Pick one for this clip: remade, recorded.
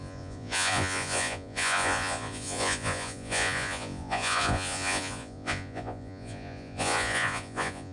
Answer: remade